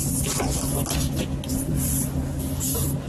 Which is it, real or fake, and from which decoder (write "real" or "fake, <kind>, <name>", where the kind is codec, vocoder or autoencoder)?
real